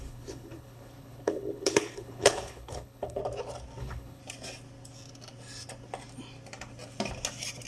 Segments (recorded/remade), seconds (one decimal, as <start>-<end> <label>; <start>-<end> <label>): 0.0-3.2 remade; 3.2-3.8 recorded; 3.8-4.2 remade; 4.2-7.7 recorded